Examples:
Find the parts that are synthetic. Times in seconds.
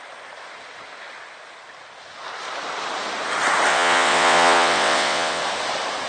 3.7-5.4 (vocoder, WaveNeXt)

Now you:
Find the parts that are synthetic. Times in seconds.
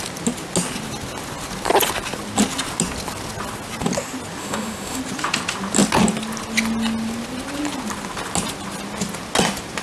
4.4-5.0 (autoencoder, DAC-VAE)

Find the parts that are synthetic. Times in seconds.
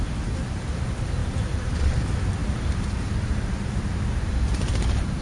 1.2-1.9 (vocoder, BigVGAN v2); 2.4-5.2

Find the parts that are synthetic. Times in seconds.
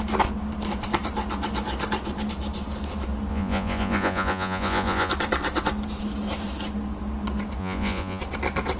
3.3-5.1 (vocoder, Vocos); 7.6-8.2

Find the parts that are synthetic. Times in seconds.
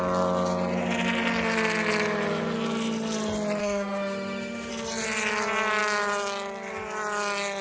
3.6-4.7 (autoencoder, DAC-VAE)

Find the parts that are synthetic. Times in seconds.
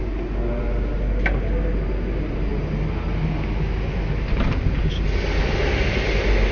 none